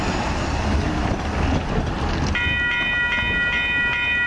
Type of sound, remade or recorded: recorded